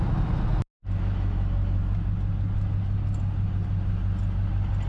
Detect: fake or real real